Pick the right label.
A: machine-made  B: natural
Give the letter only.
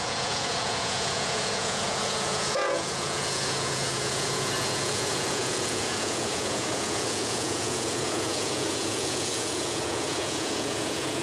A